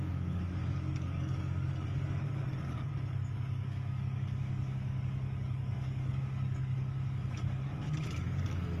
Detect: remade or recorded remade